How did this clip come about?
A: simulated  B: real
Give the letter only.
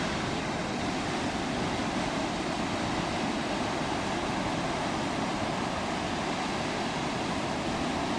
B